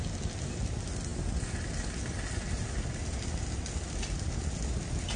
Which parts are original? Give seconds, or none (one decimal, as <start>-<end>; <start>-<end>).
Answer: 0.0-5.2

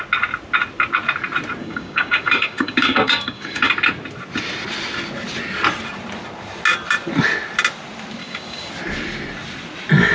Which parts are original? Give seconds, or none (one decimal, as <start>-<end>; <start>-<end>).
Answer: 0.0-1.6; 3.7-8.2; 8.7-10.1